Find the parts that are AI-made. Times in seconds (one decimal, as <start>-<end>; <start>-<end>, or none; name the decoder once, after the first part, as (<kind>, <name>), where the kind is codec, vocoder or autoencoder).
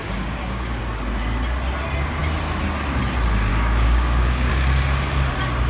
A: 0.0-0.8 (codec, DAC); 3.5-4.5